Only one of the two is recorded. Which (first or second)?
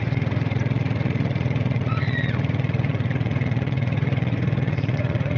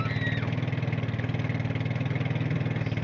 second